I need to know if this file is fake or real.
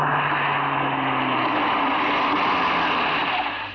real